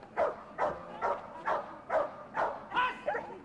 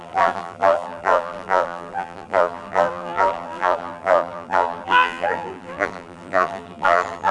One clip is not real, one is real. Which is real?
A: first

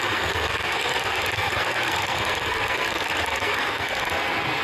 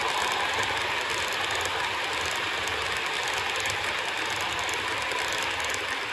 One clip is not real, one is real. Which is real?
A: second